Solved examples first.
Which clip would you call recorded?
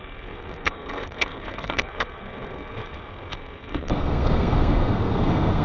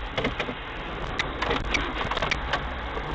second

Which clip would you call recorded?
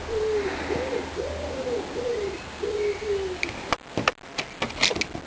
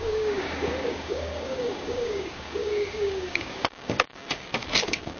first